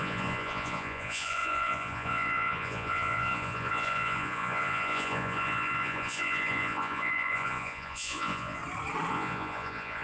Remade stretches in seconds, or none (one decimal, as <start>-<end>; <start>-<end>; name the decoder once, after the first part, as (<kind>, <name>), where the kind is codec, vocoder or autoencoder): 0.0-8.6 (vocoder, Vocos); 9.1-10.0